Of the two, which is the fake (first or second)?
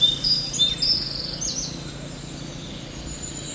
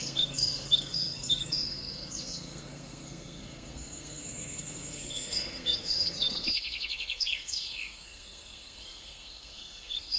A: second